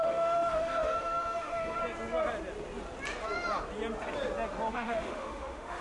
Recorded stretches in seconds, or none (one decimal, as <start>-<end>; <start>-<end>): 1.8-4.7